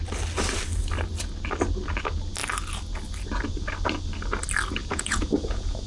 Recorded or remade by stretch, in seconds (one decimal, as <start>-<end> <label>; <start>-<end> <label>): 0.0-4.8 recorded; 4.8-5.9 remade